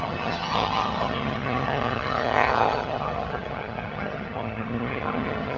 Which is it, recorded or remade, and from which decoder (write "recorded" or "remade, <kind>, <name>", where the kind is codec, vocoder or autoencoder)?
remade, vocoder, HiFi-GAN